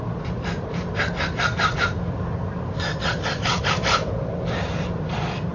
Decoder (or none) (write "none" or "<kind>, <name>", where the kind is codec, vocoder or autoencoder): none